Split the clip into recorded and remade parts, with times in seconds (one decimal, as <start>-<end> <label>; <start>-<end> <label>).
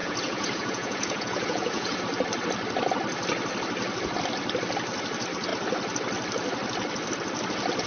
0.0-2.0 remade; 2.0-7.9 recorded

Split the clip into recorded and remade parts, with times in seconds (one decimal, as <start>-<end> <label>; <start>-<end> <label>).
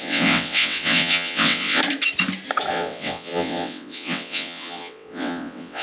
0.0-1.8 remade; 1.8-2.7 recorded; 2.7-5.8 remade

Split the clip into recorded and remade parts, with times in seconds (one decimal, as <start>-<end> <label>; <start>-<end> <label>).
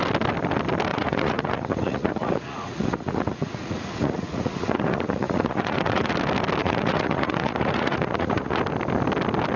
0.0-0.9 recorded; 0.9-6.1 remade; 6.1-6.6 recorded; 6.6-8.6 remade; 8.6-9.6 recorded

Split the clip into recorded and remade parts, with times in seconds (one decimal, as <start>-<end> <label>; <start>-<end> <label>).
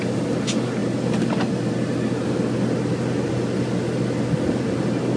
0.0-5.2 recorded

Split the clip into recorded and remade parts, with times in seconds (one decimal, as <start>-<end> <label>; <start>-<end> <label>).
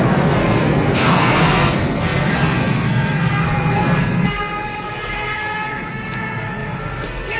0.0-7.4 remade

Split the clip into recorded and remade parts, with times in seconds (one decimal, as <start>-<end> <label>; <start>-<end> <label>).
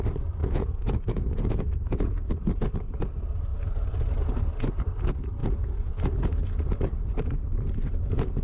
0.0-0.4 recorded; 0.4-2.3 remade; 2.3-5.4 recorded; 5.4-6.1 remade; 6.1-8.4 recorded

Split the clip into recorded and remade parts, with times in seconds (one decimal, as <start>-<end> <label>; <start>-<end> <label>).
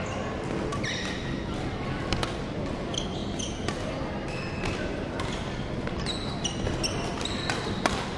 0.0-8.2 recorded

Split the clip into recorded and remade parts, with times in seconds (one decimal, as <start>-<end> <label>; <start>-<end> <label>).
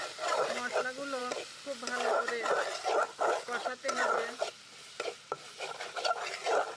0.0-6.8 recorded